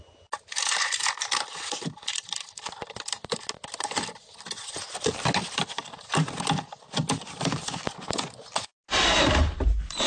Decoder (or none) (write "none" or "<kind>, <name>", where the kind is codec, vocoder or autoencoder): none